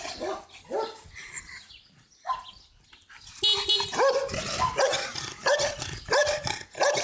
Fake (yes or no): no